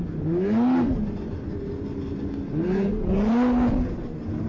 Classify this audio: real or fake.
real